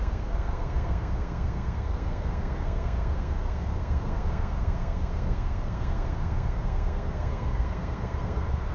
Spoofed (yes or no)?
yes